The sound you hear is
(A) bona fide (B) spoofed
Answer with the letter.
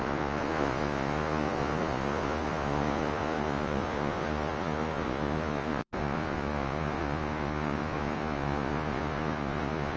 B